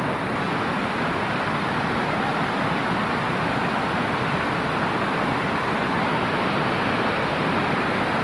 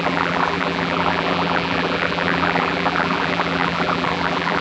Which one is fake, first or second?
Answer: second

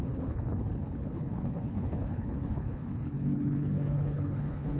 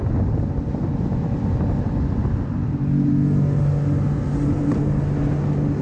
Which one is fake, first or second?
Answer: first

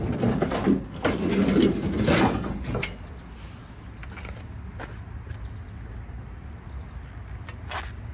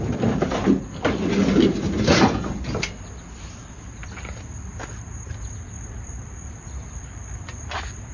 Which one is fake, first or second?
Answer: second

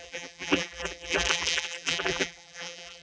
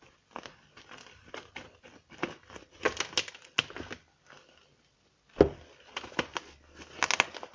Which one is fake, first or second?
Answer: first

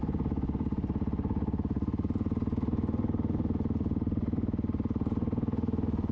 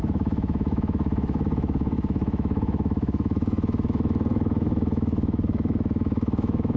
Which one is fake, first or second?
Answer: second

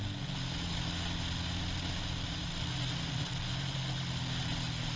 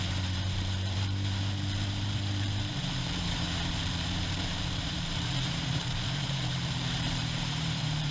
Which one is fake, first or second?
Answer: second